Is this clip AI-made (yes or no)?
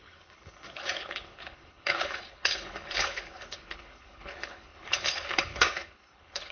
yes